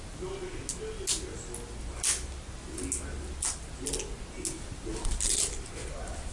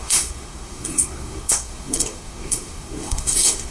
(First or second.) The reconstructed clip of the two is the second